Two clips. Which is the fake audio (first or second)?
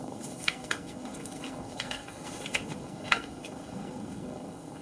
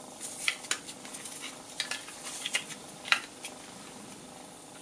first